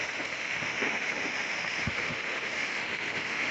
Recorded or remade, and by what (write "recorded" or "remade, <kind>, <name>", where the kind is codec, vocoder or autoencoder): remade, autoencoder, DAC-VAE